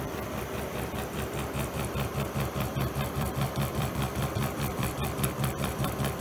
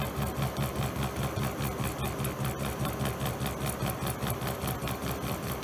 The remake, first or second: first